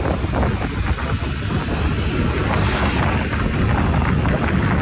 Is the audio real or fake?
real